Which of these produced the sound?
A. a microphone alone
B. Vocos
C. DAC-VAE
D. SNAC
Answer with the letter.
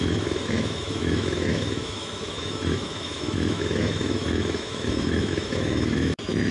C